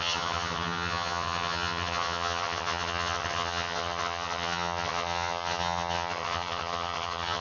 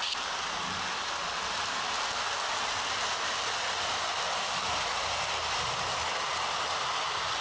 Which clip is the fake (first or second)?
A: first